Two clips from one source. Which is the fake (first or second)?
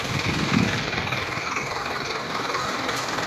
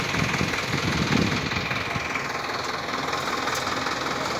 first